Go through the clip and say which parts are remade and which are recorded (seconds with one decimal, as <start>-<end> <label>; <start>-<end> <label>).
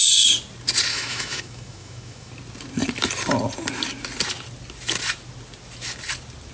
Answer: 0.0-0.9 recorded; 0.9-2.3 remade; 2.3-6.5 recorded